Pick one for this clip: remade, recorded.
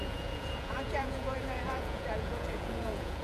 remade